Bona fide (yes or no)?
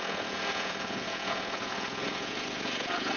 no